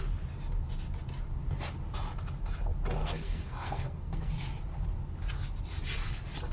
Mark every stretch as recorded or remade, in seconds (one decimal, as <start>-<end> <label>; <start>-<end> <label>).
0.0-3.0 recorded; 3.0-4.3 remade; 4.3-6.5 recorded